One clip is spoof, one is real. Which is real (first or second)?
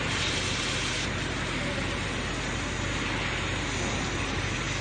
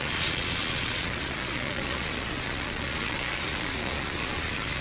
first